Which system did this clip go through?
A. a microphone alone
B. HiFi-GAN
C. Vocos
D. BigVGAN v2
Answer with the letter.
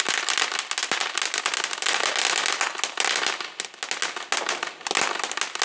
A